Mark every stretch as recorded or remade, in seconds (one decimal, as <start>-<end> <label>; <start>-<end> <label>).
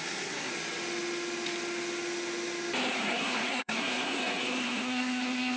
0.0-0.5 remade; 0.5-2.9 recorded; 2.9-5.6 remade